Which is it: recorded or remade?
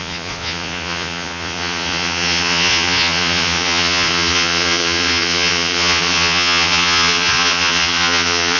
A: remade